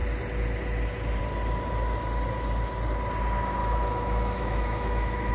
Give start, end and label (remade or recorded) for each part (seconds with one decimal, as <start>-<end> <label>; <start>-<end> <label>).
0.0-3.6 recorded; 3.6-5.3 remade